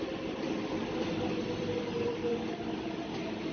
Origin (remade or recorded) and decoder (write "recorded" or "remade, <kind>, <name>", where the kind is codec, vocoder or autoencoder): recorded